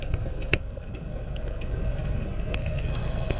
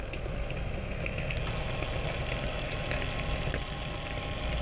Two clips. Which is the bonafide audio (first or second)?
second